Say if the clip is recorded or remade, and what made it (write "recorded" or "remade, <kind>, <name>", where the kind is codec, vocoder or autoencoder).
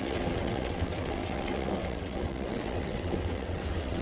remade, vocoder, WaveNeXt